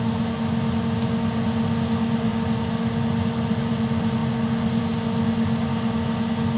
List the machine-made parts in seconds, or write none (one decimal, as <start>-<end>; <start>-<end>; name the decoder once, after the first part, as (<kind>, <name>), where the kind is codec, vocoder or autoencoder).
none